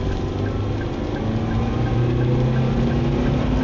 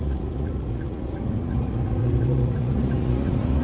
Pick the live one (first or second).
first